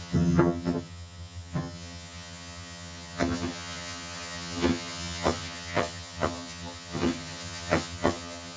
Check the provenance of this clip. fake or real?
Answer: fake